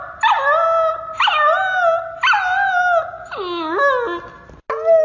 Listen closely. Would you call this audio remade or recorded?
recorded